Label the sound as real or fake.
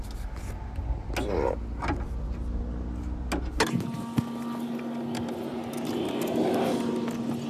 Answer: real